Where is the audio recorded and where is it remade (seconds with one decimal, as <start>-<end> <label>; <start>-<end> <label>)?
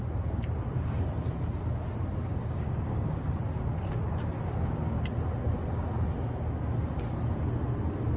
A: 0.0-2.3 recorded; 2.3-3.4 remade; 3.4-8.2 recorded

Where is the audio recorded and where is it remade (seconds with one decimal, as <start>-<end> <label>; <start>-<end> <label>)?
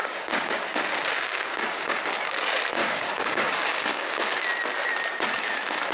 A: 0.0-0.6 remade; 0.6-1.0 recorded; 1.0-2.0 remade; 2.0-2.8 recorded; 2.8-4.3 remade; 4.3-5.9 recorded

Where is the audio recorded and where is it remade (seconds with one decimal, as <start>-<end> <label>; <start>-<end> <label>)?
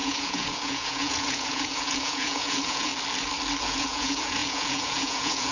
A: 0.0-2.9 remade; 2.9-3.6 recorded; 3.6-5.5 remade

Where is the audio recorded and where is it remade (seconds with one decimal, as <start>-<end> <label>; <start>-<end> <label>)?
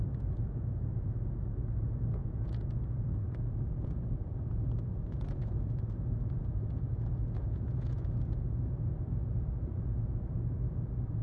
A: 0.0-11.2 remade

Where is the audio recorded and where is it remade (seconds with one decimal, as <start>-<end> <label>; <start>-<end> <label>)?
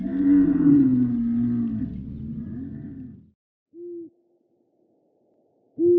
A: 0.0-6.0 recorded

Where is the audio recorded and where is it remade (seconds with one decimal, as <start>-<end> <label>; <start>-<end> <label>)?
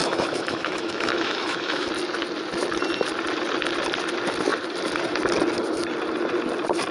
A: 0.0-1.9 remade; 1.9-6.9 recorded